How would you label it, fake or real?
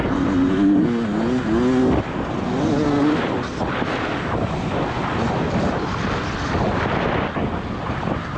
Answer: real